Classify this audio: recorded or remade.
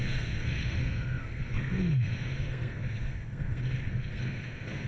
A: remade